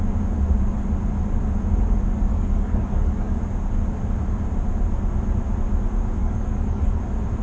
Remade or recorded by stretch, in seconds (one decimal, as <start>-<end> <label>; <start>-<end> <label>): 0.0-2.3 recorded; 2.3-3.4 remade; 3.4-6.2 recorded; 6.2-7.0 remade; 7.0-7.4 recorded